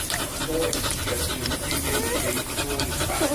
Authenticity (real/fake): fake